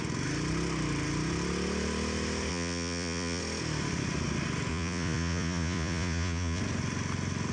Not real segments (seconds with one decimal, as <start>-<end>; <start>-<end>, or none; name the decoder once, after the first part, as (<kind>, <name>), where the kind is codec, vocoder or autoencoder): 2.5-3.4 (vocoder, Vocos); 4.7-6.6